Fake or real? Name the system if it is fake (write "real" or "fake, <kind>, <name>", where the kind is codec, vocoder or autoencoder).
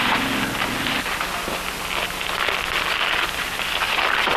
real